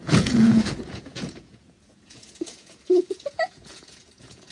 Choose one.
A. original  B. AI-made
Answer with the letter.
B